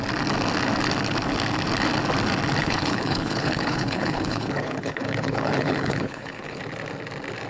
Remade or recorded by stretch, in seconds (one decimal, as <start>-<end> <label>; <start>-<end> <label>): 0.0-2.6 recorded; 2.6-6.6 remade; 6.6-7.5 recorded